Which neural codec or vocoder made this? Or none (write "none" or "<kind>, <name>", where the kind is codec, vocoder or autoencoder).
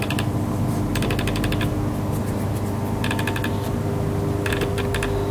none